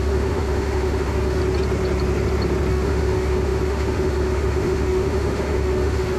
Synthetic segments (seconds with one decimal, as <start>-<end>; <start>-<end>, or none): 0.0-1.4; 2.7-6.2